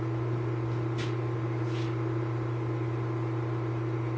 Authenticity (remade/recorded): recorded